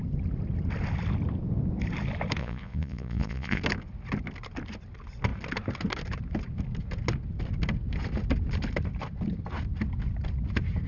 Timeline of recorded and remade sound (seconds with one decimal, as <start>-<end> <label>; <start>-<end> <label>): 0.0-2.4 recorded; 2.4-3.6 remade; 3.6-10.9 recorded